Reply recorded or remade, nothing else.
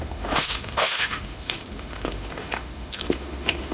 remade